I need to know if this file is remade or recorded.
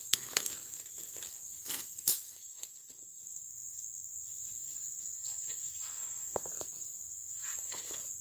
remade